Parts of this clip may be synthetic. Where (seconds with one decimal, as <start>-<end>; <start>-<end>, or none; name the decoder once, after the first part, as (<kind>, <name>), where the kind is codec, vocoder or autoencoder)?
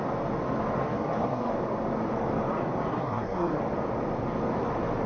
0.8-1.5 (codec, SNAC); 2.9-3.6